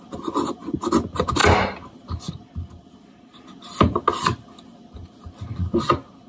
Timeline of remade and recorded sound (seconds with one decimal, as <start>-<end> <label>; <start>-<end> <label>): 0.0-6.3 recorded